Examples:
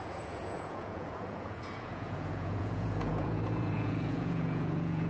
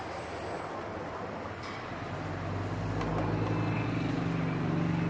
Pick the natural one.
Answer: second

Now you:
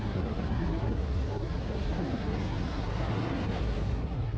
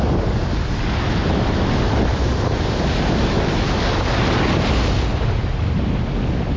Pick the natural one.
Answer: second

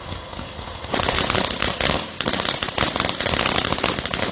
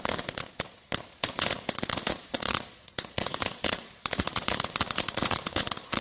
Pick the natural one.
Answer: first